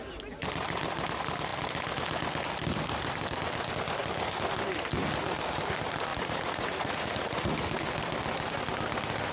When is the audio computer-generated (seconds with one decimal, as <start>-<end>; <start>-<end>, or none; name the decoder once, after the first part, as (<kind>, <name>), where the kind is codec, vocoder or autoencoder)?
6.1-7.5 (vocoder, Vocos)